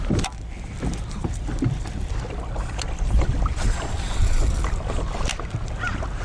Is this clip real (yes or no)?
yes